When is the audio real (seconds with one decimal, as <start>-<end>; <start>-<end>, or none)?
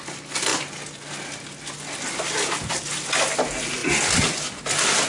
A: 0.0-5.1